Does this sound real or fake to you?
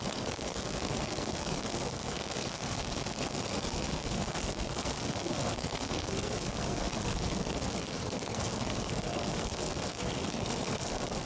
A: fake